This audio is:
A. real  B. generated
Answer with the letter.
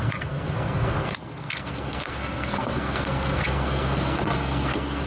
B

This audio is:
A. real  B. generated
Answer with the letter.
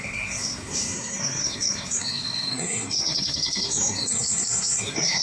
B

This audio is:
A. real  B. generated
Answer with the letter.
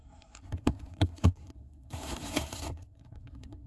B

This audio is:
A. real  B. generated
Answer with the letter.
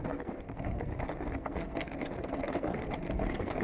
B